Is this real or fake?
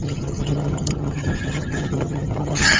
fake